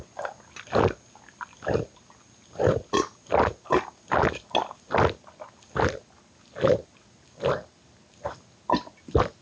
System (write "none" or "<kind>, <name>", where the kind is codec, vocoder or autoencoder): none